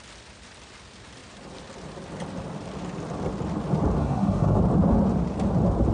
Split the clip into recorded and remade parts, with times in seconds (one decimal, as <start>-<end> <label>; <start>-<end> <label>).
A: 0.0-4.0 recorded; 4.0-4.6 remade; 4.6-5.9 recorded